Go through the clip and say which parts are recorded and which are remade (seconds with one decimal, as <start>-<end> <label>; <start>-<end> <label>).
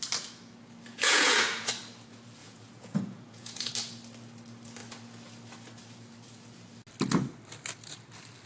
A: 0.0-0.9 recorded; 0.9-1.7 remade; 1.7-2.4 recorded; 2.4-3.7 remade; 3.7-8.5 recorded